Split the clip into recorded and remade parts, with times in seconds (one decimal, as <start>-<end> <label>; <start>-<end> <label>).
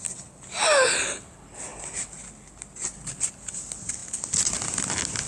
0.0-5.3 recorded